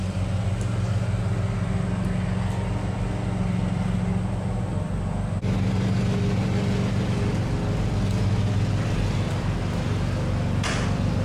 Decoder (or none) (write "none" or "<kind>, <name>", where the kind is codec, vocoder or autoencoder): none